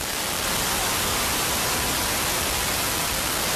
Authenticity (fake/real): real